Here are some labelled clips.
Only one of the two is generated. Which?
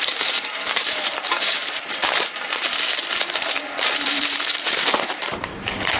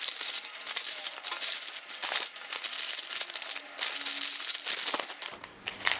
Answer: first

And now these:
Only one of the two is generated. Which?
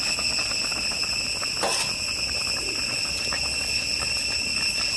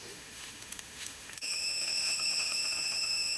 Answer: second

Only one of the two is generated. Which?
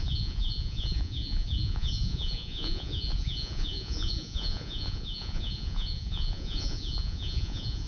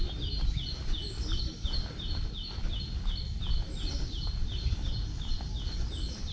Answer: first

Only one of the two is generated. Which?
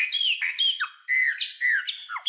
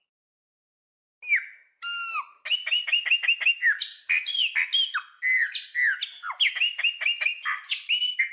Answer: first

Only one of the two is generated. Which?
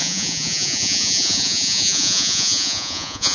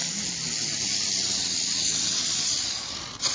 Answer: first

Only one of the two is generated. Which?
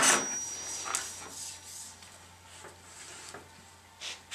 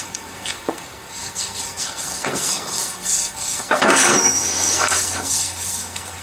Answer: second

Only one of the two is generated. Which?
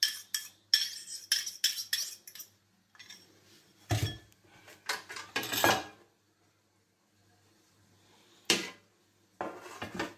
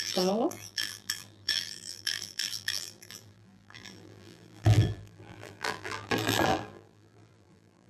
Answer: second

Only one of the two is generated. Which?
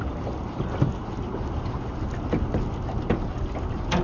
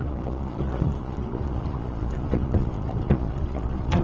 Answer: second